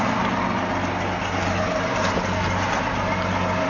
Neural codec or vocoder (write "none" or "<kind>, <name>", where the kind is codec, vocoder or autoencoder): none